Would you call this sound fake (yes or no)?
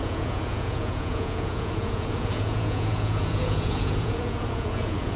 yes